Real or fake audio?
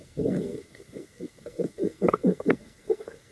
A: fake